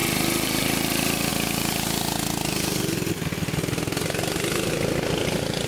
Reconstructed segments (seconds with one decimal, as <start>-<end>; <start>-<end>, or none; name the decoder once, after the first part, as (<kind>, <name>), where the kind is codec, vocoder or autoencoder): none